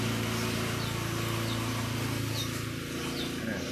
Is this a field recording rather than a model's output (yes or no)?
yes